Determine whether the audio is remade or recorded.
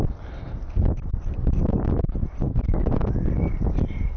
recorded